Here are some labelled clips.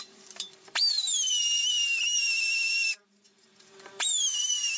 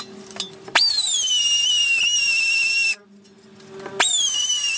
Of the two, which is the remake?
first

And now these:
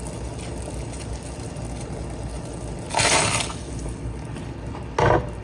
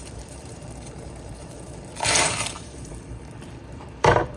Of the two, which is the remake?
second